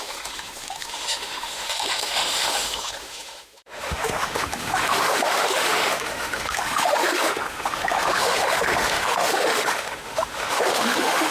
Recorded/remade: remade